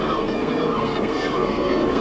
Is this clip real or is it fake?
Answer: fake